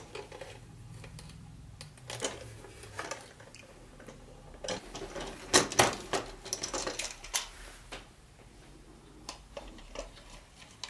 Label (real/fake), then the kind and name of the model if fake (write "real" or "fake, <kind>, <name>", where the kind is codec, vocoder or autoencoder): real